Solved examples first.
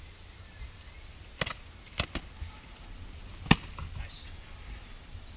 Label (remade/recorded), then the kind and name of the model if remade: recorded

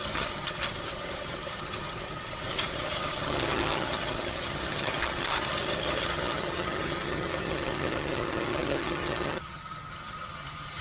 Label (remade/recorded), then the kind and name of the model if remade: remade, vocoder, HiFi-GAN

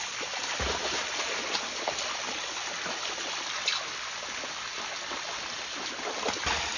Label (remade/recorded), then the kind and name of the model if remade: recorded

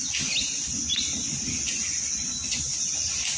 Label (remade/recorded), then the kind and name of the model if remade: recorded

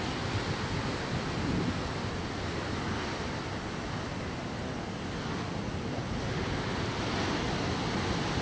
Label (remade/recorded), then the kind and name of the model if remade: recorded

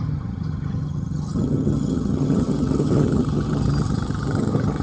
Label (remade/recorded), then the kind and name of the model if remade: remade, vocoder, HiFi-GAN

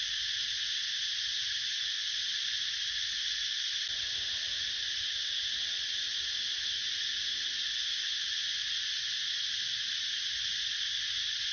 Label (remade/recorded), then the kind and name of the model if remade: recorded